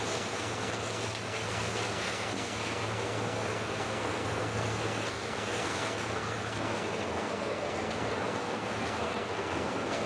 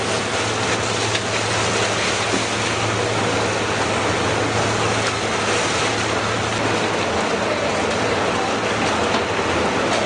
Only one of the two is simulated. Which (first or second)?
first